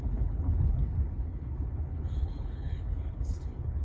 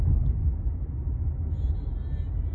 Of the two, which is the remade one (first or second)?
first